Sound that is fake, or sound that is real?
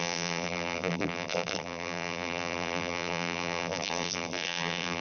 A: fake